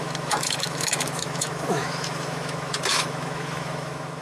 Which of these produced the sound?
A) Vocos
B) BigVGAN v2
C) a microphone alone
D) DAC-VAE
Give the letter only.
D